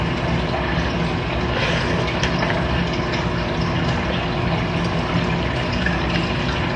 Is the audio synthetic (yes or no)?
no